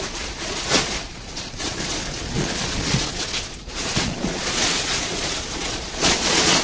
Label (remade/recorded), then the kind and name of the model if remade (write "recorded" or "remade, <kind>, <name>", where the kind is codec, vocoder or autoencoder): remade, vocoder, Vocos